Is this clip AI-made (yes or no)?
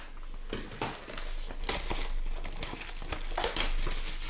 no